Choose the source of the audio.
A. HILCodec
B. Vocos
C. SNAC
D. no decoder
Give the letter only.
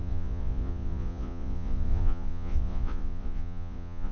B